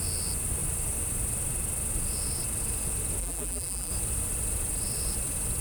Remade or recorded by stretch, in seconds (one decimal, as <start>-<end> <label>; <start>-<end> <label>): 0.0-3.2 recorded; 3.2-3.9 remade; 3.9-5.6 recorded